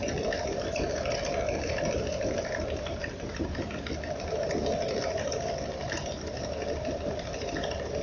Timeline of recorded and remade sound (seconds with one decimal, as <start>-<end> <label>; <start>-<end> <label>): 0.0-2.0 recorded; 2.0-3.5 remade; 3.5-5.0 recorded; 5.0-8.0 remade